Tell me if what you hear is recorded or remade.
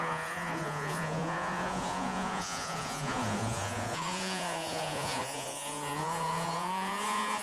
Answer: remade